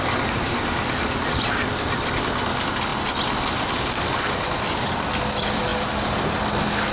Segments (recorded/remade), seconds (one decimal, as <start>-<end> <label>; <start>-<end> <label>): 0.0-6.9 recorded